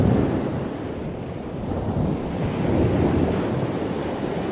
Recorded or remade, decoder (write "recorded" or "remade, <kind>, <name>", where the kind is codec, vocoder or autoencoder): recorded